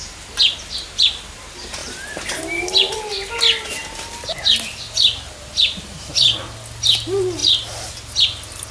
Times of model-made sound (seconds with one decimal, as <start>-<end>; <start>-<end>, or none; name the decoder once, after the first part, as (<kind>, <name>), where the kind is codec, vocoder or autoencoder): none